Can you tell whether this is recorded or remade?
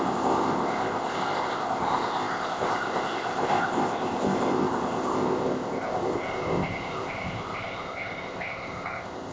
remade